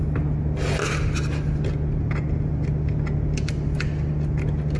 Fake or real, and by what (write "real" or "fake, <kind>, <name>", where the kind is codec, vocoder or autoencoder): real